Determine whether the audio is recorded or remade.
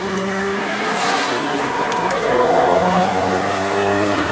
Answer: remade